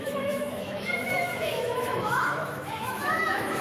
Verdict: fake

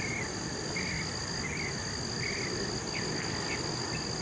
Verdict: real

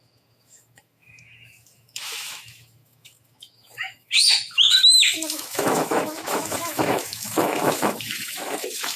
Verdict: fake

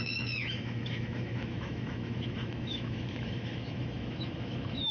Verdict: fake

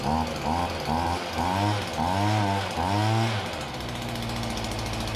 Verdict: real